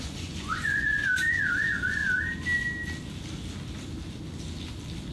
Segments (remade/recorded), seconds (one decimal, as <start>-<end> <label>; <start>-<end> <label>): 0.0-2.0 remade; 2.0-5.1 recorded